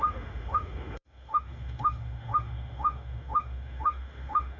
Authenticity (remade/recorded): remade